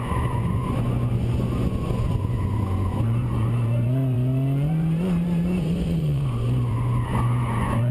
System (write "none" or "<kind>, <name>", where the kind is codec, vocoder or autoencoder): vocoder, Vocos